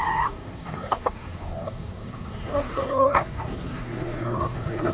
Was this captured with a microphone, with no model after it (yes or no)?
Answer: no